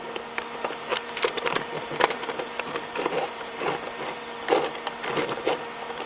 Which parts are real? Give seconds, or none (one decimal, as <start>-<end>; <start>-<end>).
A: 0.0-0.9; 4.3-6.1